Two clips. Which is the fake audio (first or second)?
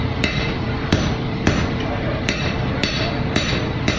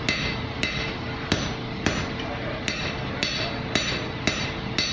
first